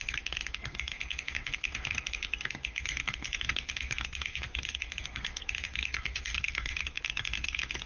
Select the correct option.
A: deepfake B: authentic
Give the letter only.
A